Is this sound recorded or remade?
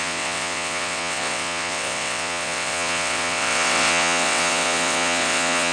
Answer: remade